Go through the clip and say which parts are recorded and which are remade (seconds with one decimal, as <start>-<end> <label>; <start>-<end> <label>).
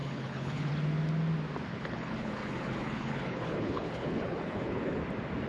0.0-0.7 remade; 0.7-1.7 recorded; 1.7-5.0 remade; 5.0-5.5 recorded